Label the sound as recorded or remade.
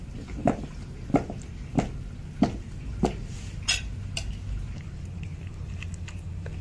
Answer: recorded